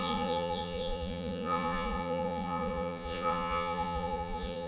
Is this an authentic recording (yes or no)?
no